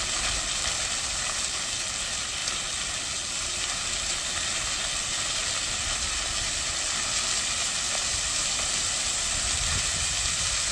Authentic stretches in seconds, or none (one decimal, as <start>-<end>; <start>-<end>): 0.0-10.7